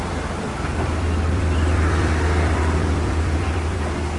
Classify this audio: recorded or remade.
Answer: remade